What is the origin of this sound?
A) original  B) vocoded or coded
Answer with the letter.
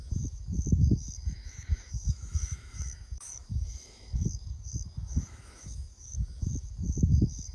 B